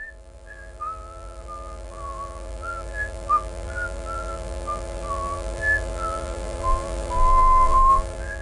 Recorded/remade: remade